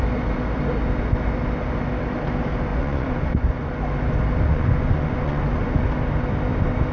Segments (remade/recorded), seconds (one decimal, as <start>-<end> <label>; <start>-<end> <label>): 0.0-2.7 recorded; 2.7-3.8 remade; 3.8-4.5 recorded; 4.5-5.9 remade; 5.9-6.9 recorded